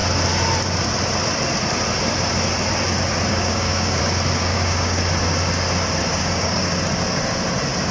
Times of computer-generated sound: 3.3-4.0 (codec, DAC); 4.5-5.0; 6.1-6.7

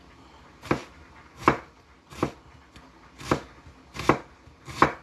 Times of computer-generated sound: 0.8-2.4 (vocoder, BigVGAN v2)

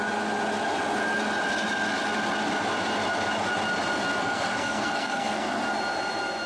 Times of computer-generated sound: 4.2-5.6 (codec, SNAC)